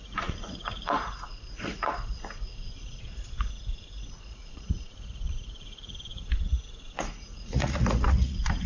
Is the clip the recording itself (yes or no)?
no